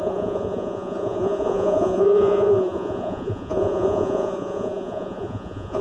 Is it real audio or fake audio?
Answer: fake